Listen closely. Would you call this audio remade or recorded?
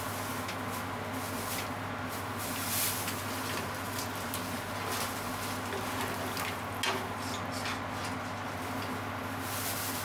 recorded